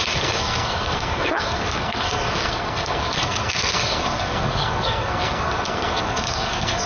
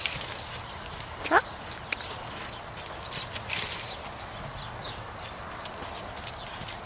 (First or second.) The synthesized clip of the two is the first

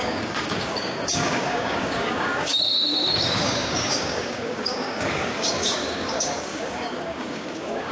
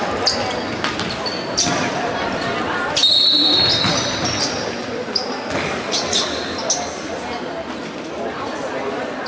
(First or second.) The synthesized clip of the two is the first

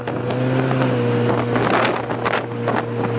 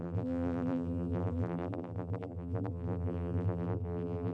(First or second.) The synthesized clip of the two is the second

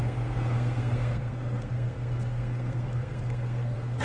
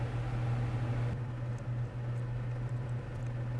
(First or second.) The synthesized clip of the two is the first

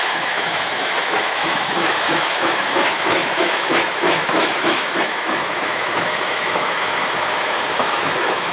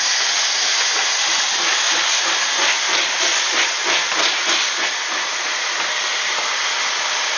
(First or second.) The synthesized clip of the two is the first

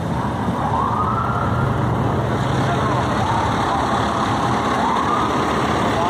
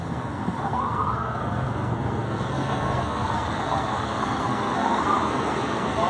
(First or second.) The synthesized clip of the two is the second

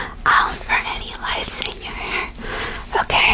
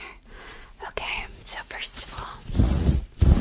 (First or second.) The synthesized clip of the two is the second